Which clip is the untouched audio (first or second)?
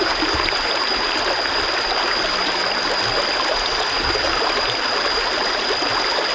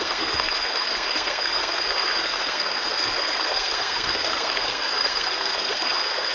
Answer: first